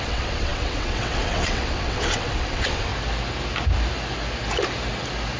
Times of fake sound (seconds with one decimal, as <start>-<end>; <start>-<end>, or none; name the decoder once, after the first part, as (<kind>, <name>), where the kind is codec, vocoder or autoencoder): 0.0-2.9 (vocoder, WaveNeXt)